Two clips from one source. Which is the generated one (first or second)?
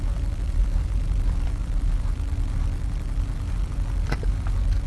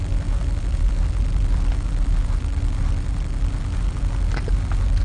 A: first